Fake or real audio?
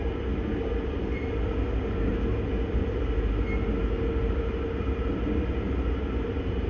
real